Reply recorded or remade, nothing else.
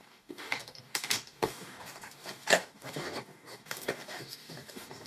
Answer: remade